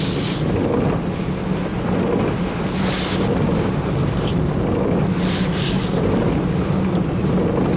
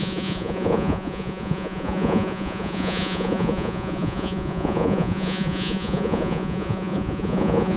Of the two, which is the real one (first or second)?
first